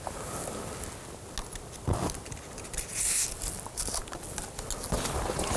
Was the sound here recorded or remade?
recorded